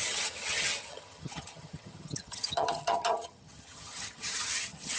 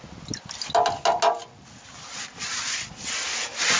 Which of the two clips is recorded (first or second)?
second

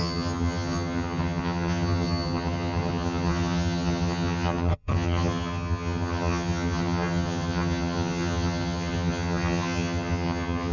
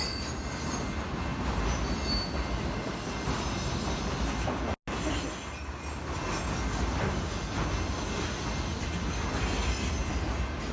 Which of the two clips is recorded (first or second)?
second